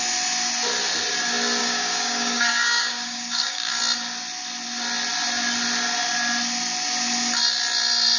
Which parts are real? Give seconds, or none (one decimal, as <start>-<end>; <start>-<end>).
0.0-1.6; 3.8-8.2